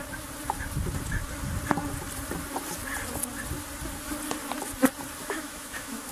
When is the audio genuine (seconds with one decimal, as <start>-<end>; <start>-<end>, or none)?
0.0-5.2